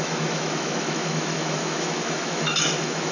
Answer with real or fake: fake